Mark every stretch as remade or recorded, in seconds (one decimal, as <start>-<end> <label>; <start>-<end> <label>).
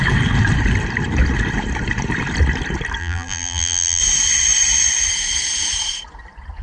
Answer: 0.0-3.0 recorded; 3.0-4.0 remade; 4.0-6.6 recorded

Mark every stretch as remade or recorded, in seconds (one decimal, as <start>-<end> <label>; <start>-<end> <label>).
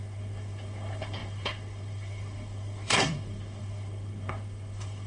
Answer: 0.0-5.1 remade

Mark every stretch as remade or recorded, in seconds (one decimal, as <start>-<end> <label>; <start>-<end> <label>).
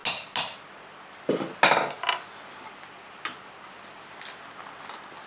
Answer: 0.0-5.3 recorded